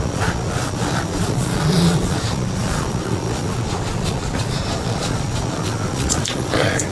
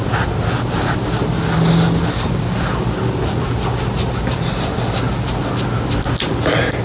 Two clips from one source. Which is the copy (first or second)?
first